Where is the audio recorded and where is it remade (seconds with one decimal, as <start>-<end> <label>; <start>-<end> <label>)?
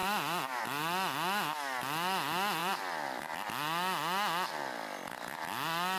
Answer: 0.0-0.6 remade; 0.6-2.6 recorded; 2.6-3.2 remade; 3.2-6.0 recorded